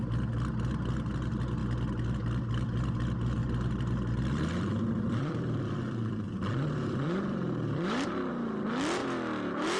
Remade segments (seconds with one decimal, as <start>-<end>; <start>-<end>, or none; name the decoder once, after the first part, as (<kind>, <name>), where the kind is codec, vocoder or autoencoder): 3.4-8.3 (vocoder, BigVGAN v2)